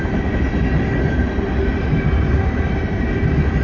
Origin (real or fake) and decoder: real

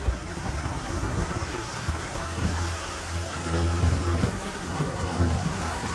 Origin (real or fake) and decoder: fake, codec, SNAC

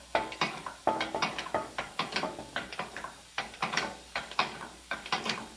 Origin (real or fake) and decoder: fake, codec, DAC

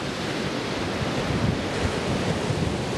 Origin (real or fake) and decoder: real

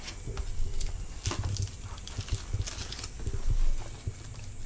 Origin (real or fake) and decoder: real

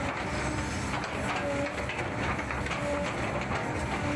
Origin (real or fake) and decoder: real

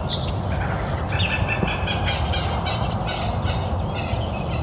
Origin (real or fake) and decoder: real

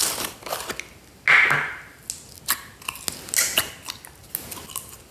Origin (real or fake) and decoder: real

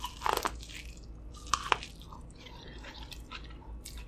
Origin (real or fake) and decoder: real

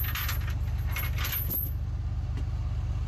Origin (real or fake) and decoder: real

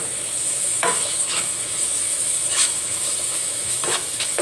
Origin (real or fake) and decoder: fake, autoencoder, DAC-VAE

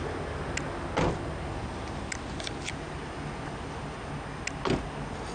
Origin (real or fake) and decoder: real